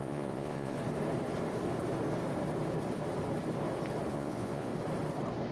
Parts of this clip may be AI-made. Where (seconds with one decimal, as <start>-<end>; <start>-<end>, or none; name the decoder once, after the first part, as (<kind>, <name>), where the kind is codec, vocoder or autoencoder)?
0.0-0.8 (vocoder, Vocos); 4.1-4.7